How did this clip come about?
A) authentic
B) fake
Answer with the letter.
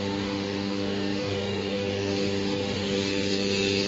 B